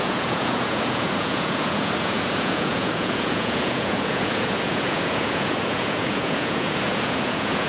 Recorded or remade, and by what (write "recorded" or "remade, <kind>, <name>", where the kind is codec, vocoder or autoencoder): remade, vocoder, Vocos